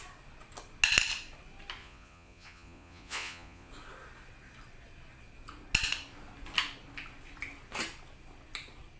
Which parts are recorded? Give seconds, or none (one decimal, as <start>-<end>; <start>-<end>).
0.0-1.8; 3.7-9.0